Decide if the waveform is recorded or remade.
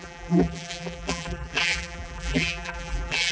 remade